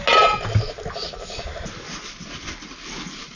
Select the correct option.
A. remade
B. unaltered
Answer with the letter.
B